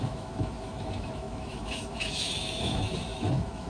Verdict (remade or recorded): remade